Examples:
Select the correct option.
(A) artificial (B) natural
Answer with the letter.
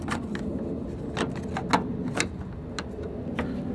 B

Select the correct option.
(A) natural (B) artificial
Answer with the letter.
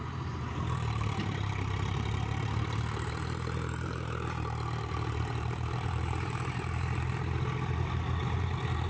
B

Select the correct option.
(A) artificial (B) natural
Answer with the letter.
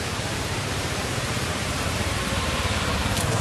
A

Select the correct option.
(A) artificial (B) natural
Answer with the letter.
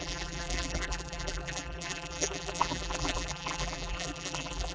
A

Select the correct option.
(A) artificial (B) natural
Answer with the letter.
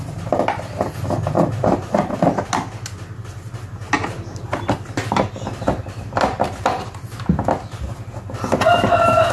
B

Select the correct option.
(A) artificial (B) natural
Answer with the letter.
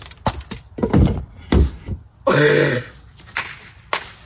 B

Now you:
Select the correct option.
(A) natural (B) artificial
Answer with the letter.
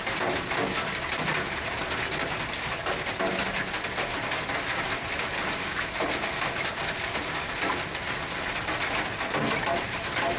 A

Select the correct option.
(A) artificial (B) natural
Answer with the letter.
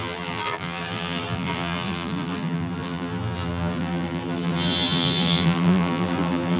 A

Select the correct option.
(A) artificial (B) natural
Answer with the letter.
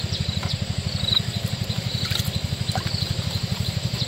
B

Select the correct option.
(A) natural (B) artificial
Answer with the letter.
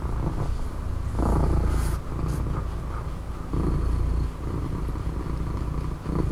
A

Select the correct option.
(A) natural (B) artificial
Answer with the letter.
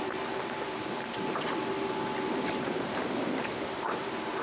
B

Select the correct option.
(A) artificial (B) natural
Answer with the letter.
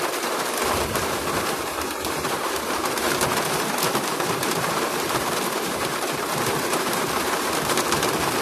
A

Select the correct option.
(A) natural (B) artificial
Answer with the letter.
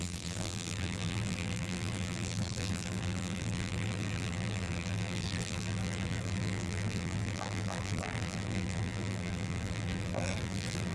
B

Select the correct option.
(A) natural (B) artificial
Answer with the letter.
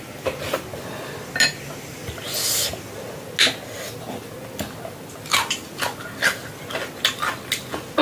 A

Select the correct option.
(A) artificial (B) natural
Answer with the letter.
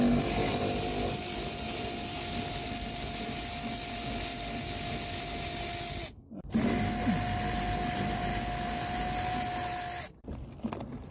B